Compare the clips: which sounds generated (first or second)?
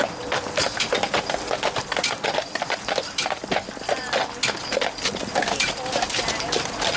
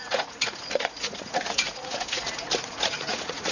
second